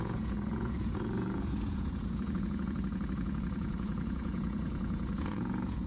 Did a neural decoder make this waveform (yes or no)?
yes